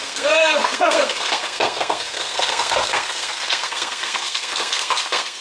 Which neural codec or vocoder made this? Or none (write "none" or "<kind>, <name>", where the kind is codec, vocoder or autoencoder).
codec, SNAC